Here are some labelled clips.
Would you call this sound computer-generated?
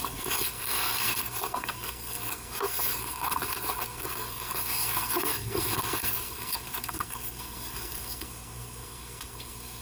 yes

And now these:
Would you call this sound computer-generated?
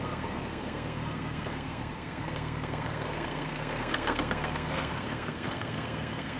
yes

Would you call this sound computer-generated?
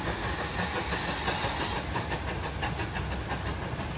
no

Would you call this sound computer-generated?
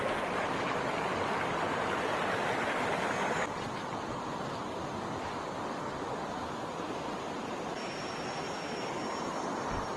no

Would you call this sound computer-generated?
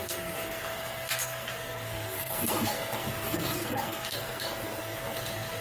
yes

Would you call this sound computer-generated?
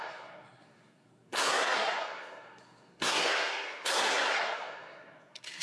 yes